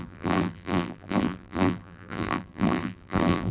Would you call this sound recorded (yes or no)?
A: no